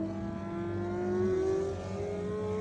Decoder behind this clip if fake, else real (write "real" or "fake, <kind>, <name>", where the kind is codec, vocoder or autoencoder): real